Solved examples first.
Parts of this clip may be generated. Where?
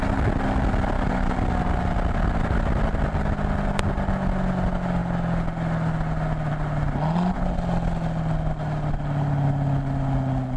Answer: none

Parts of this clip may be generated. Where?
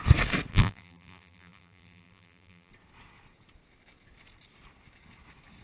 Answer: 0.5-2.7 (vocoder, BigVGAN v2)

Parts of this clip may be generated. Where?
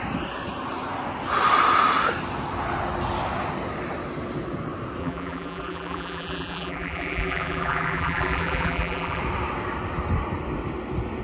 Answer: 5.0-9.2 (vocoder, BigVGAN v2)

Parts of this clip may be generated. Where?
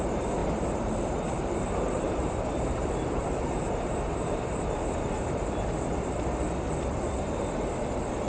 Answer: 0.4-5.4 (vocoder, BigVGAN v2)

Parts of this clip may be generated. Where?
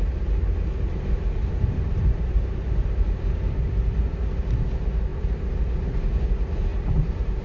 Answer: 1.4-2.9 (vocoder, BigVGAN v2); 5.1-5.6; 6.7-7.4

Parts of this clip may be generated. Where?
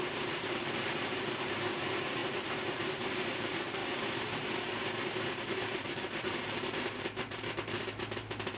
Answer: 0.0-8.6 (vocoder, BigVGAN v2)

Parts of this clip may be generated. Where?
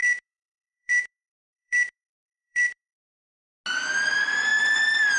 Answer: 0.0-3.1 (vocoder, BigVGAN v2)